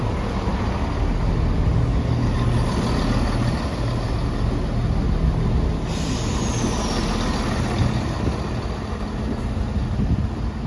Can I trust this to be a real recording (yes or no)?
yes